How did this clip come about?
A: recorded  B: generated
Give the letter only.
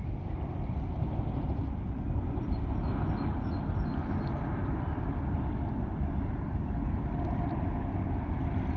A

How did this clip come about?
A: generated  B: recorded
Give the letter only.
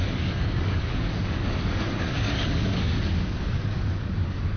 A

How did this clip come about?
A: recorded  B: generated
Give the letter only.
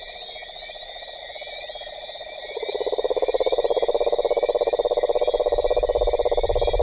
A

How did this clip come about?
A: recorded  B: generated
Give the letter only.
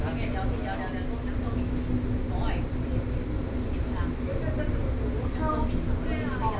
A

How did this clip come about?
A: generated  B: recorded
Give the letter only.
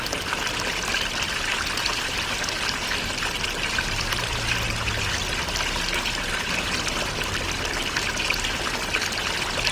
B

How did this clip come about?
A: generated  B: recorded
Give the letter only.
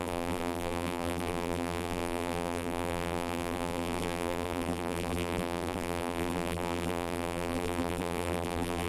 A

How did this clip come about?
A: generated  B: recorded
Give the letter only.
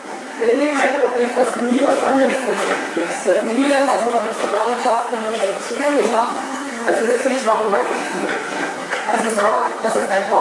A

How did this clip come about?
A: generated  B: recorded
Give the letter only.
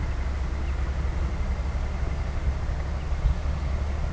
B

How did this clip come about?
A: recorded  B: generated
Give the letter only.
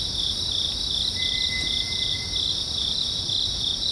A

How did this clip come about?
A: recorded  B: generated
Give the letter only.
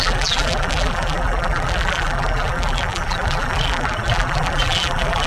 B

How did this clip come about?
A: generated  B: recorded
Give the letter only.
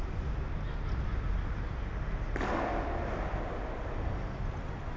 B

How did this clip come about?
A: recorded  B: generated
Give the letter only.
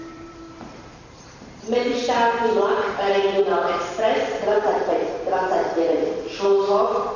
B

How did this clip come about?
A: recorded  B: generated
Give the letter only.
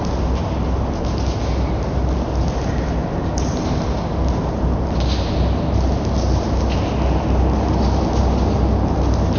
A